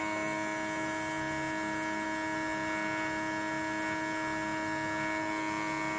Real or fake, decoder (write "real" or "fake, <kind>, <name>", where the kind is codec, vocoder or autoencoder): real